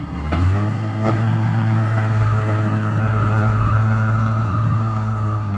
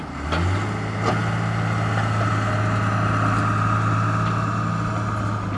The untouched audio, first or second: second